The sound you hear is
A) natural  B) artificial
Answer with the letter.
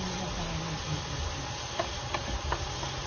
A